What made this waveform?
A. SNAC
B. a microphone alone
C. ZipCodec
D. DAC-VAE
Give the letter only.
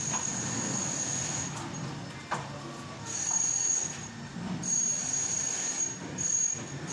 B